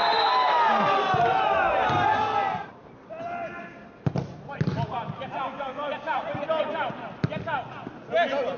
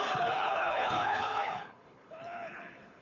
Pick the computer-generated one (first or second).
second